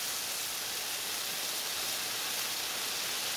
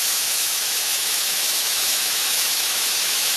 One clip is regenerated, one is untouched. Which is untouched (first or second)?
first